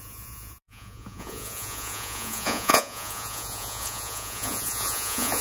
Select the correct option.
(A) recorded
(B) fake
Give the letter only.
B